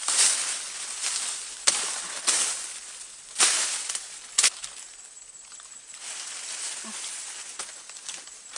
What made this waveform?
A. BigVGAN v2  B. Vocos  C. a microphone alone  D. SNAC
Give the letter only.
C